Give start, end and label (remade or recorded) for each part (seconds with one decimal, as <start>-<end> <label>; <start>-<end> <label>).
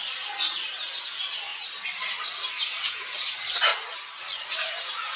0.0-5.2 recorded